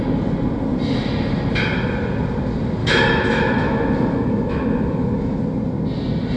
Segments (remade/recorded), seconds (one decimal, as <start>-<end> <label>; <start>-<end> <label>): 0.0-2.8 recorded; 2.8-5.4 remade; 5.4-6.4 recorded